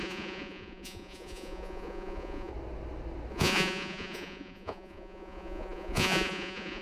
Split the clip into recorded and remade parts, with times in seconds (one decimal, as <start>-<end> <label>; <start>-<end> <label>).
0.0-2.5 remade; 2.5-3.3 recorded; 3.3-6.8 remade